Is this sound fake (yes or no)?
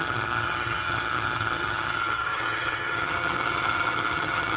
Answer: yes